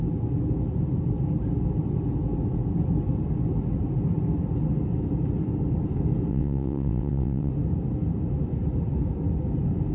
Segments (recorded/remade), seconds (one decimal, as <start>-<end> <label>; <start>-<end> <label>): 0.0-6.3 recorded; 6.3-7.5 remade; 7.5-9.9 recorded